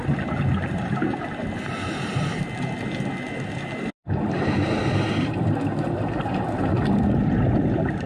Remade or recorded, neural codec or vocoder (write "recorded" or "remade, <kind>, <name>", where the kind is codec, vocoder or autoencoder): recorded